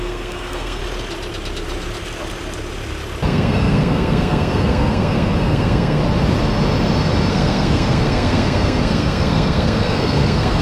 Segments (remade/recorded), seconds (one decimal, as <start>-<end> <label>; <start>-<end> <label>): 0.0-0.8 remade; 0.8-3.3 recorded; 3.3-6.0 remade; 6.0-7.3 recorded; 7.3-10.6 remade